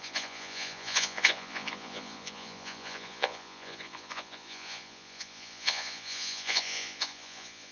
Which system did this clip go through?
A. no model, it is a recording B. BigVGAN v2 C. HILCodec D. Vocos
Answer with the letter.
D